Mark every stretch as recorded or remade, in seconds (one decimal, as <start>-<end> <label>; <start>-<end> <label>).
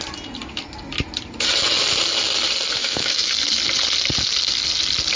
0.0-2.8 recorded; 2.8-3.3 remade; 3.3-5.2 recorded